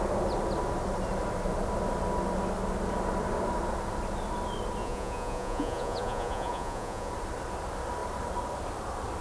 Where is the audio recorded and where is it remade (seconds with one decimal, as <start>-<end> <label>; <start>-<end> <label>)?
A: 0.0-4.8 recorded; 4.8-7.1 remade; 7.1-9.2 recorded